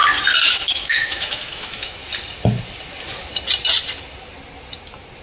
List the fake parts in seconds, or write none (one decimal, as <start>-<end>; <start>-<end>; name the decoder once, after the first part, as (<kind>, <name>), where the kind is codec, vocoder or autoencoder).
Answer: 0.5-2.0 (autoencoder, DAC-VAE)